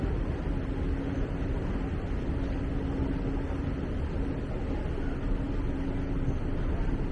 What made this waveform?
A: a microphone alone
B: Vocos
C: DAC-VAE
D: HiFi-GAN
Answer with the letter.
A